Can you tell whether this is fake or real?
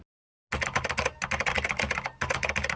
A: real